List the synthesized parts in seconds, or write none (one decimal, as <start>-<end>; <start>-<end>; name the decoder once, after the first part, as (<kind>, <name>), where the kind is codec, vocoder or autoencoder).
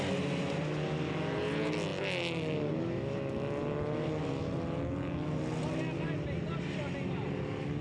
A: none